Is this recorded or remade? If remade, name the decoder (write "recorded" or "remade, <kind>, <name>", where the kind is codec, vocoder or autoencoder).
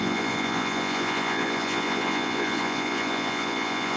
remade, vocoder, Vocos